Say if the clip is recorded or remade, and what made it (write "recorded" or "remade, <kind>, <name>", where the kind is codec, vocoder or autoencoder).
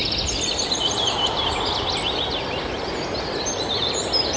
recorded